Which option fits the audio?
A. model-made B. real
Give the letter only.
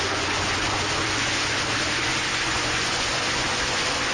A